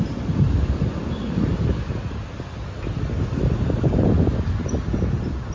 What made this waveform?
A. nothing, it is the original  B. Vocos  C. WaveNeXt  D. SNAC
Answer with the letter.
A